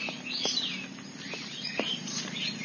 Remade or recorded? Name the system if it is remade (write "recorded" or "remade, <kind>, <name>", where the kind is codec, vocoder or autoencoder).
recorded